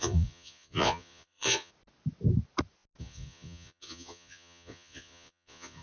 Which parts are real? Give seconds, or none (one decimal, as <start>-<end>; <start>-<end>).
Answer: 1.7-3.0